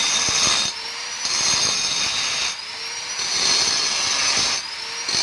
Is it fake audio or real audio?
real